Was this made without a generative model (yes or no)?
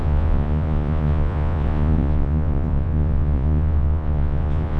no